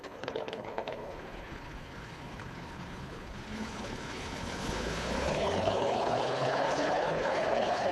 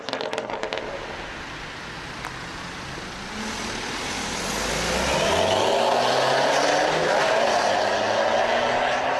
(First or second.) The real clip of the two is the second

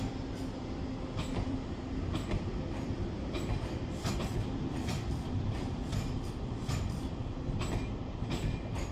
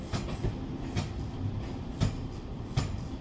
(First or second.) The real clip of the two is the second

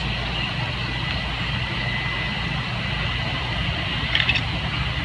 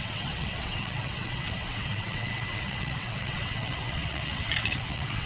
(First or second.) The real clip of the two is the first